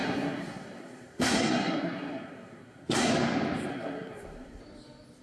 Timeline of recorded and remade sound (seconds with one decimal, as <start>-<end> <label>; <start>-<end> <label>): 0.0-3.1 remade; 3.1-3.7 recorded; 3.7-4.6 remade; 4.6-5.2 recorded